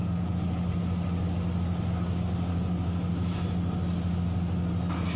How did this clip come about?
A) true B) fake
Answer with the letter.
A